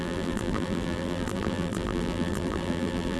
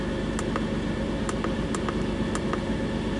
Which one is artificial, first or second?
first